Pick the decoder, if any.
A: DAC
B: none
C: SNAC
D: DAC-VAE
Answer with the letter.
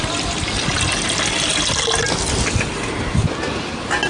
B